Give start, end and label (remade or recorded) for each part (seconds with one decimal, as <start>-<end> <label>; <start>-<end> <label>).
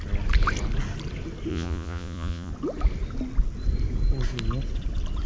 0.0-1.5 recorded; 1.5-2.5 remade; 2.5-5.3 recorded